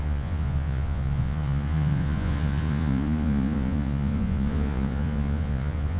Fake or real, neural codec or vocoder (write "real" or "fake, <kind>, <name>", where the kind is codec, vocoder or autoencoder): fake, vocoder, Vocos